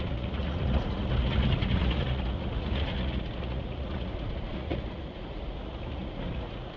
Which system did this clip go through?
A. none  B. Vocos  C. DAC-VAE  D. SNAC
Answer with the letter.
B